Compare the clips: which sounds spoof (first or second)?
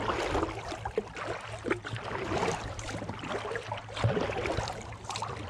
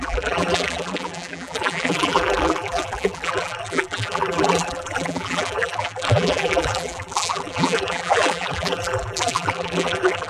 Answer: second